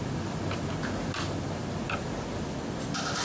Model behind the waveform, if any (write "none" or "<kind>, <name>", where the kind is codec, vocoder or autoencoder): none